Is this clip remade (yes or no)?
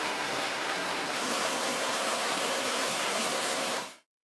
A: yes